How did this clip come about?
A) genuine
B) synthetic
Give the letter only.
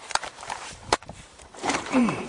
B